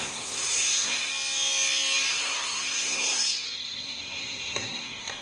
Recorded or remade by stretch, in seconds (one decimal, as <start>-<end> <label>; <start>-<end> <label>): 0.0-1.1 remade; 1.1-2.1 recorded; 2.1-5.2 remade